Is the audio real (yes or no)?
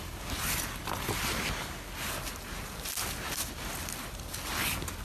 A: yes